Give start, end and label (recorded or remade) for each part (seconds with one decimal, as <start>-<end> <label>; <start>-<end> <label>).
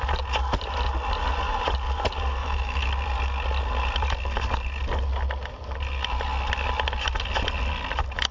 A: 0.0-2.4 recorded; 2.4-2.9 remade; 2.9-8.3 recorded